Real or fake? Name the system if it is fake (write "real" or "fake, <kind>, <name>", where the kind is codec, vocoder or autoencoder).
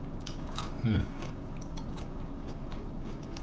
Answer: fake, codec, DAC